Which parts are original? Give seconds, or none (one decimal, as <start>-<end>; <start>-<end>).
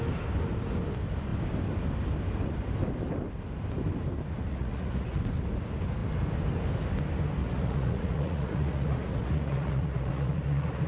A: 0.0-4.5; 5.2-7.4